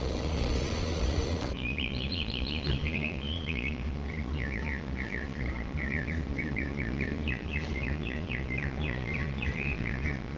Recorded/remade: remade